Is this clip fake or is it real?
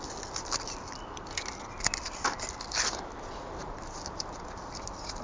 real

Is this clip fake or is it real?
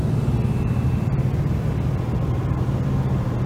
real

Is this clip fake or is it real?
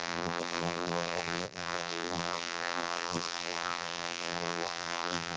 fake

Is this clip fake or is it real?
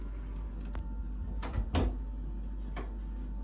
real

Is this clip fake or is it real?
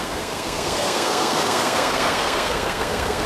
fake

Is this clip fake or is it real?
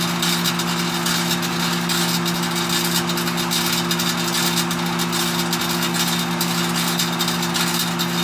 real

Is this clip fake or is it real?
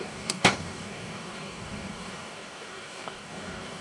fake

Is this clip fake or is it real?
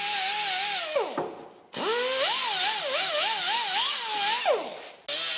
real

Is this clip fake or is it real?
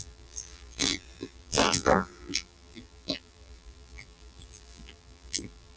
fake